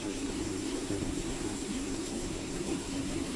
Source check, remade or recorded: remade